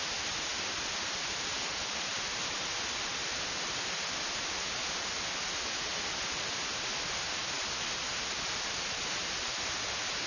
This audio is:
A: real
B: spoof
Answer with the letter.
A